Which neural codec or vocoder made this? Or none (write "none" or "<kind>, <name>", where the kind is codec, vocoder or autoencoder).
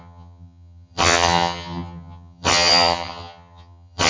vocoder, HiFi-GAN